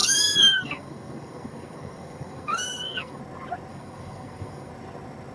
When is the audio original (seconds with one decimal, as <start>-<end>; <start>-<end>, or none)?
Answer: 3.2-3.7; 4.7-5.3